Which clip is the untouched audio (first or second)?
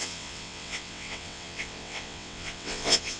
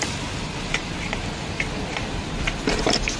second